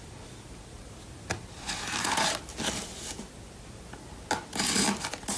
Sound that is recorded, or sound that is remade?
recorded